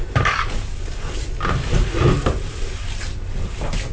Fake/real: real